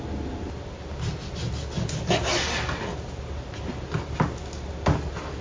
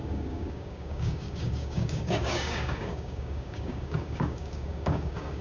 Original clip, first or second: first